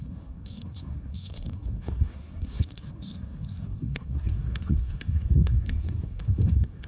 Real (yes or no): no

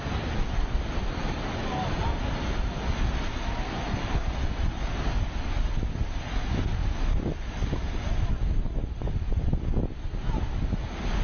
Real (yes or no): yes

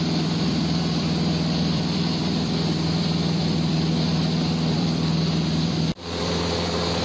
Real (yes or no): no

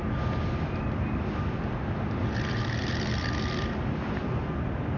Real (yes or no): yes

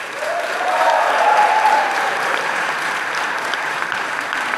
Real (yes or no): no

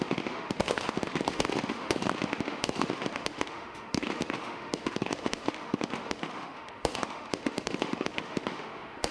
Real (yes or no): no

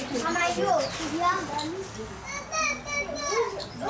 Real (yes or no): yes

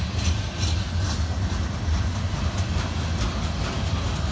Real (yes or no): yes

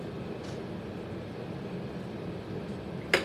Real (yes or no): yes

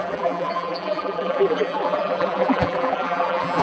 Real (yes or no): no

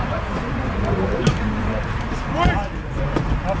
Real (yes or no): yes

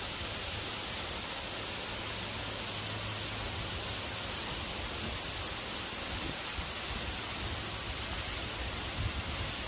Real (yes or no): yes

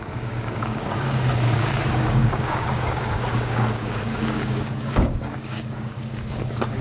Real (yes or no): no